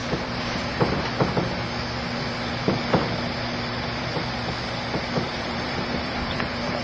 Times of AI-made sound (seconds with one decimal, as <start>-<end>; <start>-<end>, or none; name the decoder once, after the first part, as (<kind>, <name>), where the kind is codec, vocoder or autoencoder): 0.0-1.2 (vocoder, BigVGAN v2); 5.3-6.8